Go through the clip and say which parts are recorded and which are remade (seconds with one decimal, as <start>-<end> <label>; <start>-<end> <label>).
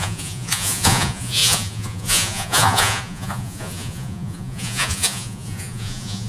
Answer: 0.0-6.3 remade